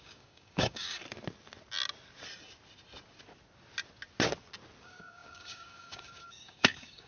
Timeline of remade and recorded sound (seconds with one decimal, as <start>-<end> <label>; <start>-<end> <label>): 0.0-1.0 remade; 1.0-4.8 recorded; 4.8-7.1 remade